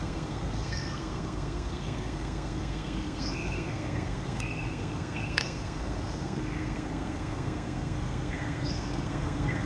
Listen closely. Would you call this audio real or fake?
fake